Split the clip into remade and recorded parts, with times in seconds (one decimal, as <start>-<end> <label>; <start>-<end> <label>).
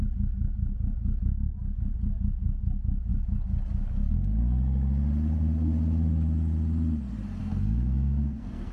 0.0-7.4 recorded; 7.4-8.7 remade